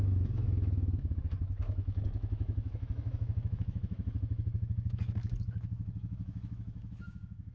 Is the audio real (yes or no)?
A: no